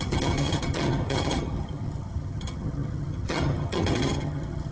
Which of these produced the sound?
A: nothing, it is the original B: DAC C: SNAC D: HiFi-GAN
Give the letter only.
D